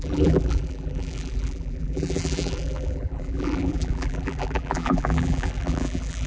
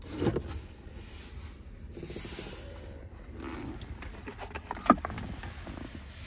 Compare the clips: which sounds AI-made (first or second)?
first